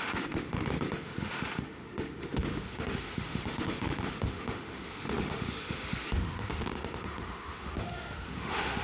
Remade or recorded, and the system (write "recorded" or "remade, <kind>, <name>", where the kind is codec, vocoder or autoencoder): remade, autoencoder, DAC-VAE